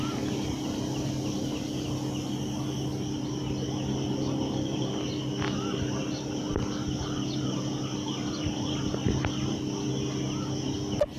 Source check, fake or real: real